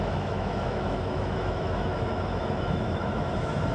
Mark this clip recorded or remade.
remade